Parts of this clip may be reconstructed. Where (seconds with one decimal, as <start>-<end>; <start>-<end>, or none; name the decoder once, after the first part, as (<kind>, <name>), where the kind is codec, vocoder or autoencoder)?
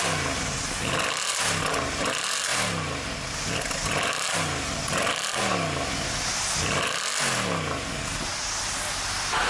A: none